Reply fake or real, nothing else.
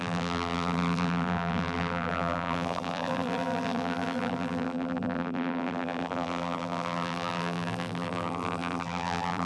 fake